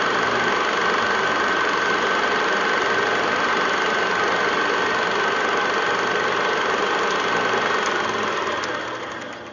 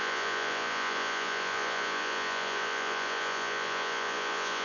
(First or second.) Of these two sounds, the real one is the first